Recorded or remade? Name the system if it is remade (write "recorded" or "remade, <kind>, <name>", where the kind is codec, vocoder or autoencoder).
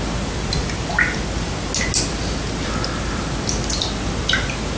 recorded